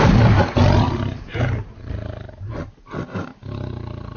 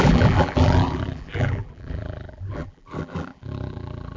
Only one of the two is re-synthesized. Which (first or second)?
second